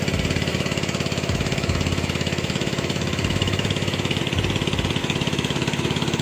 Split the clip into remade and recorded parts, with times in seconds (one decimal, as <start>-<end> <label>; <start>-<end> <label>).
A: 0.0-0.5 recorded; 0.5-4.2 remade; 4.2-5.0 recorded; 5.0-6.2 remade